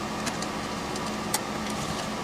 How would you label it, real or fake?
real